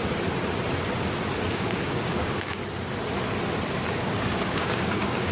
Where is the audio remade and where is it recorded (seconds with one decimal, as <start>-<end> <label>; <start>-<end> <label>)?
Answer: 0.0-1.5 recorded; 1.5-2.6 remade; 2.6-3.9 recorded; 3.9-5.3 remade

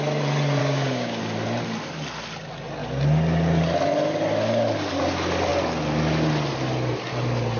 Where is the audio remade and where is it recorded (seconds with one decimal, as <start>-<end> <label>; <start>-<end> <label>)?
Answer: 0.0-0.6 recorded; 0.6-1.2 remade; 1.2-7.6 recorded

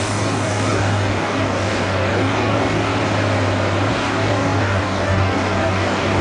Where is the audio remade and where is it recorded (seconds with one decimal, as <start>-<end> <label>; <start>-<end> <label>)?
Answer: 0.0-2.9 remade; 2.9-3.9 recorded; 3.9-6.2 remade